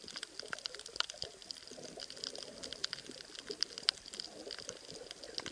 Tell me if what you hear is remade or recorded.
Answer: recorded